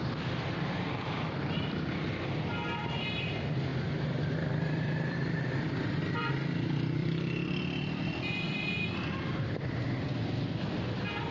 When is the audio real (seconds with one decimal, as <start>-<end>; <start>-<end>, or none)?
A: 0.0-3.7; 6.3-7.0; 7.6-11.3